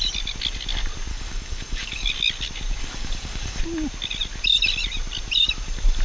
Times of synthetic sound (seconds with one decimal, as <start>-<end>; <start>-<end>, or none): 1.1-2.1; 2.8-3.6

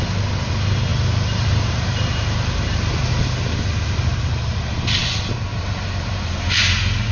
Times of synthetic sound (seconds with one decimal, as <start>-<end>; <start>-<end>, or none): 0.9-3.0; 4.1-4.6; 5.5-6.6

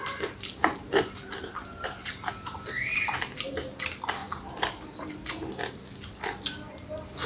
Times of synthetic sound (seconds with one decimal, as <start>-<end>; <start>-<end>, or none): 0.0-2.3; 4.2-5.1

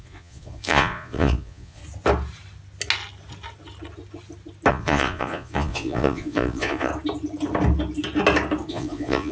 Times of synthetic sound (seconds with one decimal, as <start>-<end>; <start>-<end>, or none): 0.0-1.8; 4.7-6.9; 8.7-9.3